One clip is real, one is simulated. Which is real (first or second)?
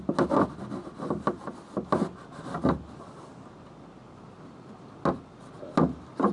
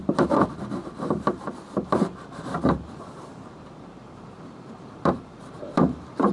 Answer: first